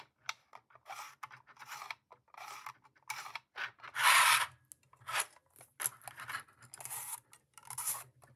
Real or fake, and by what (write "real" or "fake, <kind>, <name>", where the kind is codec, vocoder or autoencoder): real